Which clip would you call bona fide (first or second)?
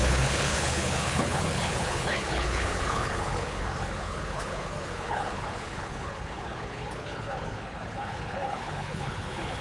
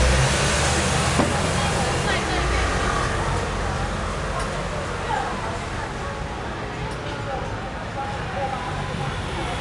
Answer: second